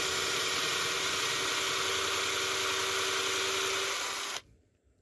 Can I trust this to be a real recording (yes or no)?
yes